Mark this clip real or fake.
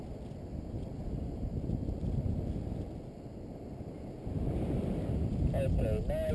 real